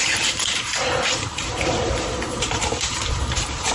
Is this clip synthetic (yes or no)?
yes